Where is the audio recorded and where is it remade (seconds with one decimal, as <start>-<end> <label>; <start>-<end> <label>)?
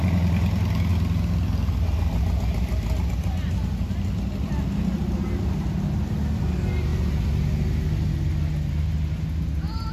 0.0-9.9 recorded